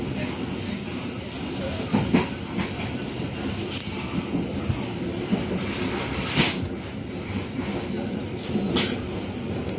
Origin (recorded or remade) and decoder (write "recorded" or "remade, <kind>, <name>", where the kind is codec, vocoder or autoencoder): recorded